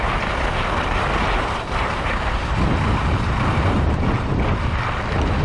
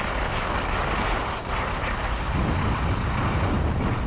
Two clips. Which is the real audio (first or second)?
second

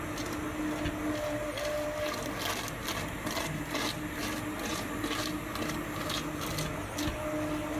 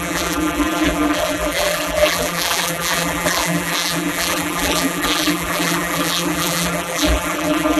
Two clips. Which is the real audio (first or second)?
first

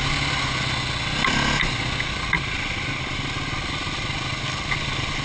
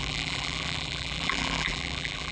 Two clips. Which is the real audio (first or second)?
first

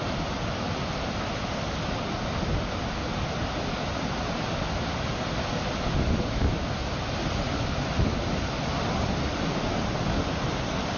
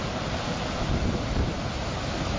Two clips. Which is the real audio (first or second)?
first